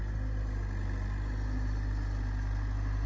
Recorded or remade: recorded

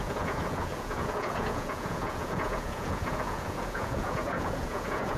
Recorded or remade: remade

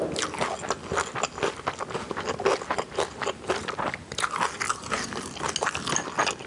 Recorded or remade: recorded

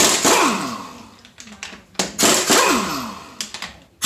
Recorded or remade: recorded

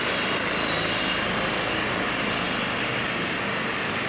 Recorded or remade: recorded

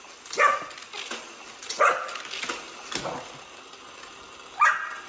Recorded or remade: recorded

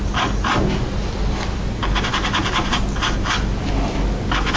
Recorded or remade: recorded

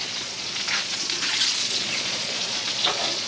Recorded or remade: remade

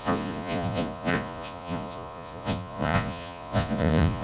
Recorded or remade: remade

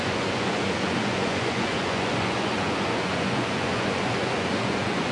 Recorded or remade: remade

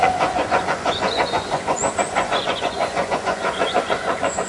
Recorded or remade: remade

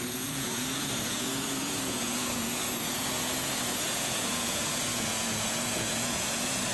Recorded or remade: remade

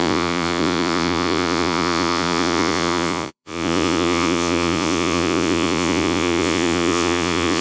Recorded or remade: remade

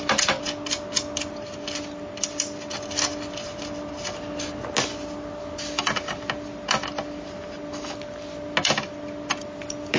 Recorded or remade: recorded